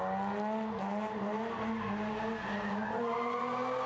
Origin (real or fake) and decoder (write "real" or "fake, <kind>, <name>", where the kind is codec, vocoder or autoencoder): real